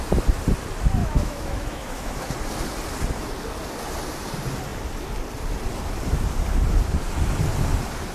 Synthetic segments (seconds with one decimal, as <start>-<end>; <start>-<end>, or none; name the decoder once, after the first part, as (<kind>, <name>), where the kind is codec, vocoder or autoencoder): 1.0-2.3 (autoencoder, DAC-VAE)